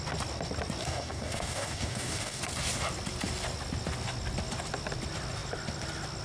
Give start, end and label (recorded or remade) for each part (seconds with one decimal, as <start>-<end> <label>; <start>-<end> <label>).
0.0-0.8 recorded; 0.8-2.4 remade; 2.4-6.2 recorded